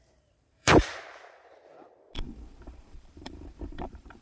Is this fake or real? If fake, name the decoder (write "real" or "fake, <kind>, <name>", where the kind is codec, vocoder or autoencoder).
fake, vocoder, BigVGAN v2